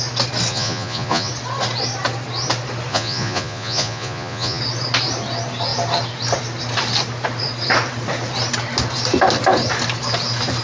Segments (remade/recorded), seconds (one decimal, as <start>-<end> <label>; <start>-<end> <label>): 0.0-0.5 recorded; 0.5-1.3 remade; 1.3-2.9 recorded; 2.9-4.6 remade; 4.6-10.6 recorded

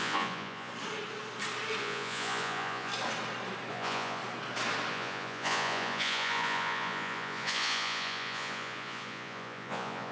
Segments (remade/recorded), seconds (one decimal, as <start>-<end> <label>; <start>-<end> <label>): 0.0-0.7 remade; 0.7-1.8 recorded; 1.8-2.9 remade; 2.9-3.7 recorded; 3.7-4.2 remade; 4.2-4.9 recorded; 4.9-10.1 remade

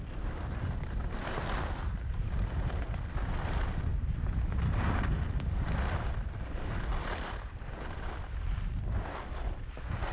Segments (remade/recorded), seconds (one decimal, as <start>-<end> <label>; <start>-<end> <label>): 0.0-10.1 recorded

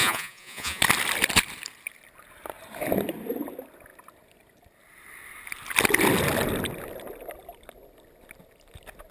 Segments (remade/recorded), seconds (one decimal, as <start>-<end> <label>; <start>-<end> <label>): 0.0-0.8 remade; 0.8-9.1 recorded